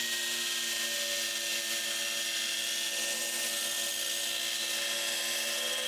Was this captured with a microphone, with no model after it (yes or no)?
yes